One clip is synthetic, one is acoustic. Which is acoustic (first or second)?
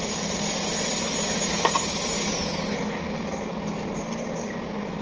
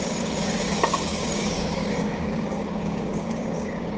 first